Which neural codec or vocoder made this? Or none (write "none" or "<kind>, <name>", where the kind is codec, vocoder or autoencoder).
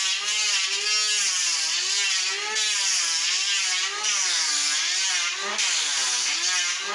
none